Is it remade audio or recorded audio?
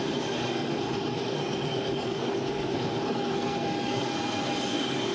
remade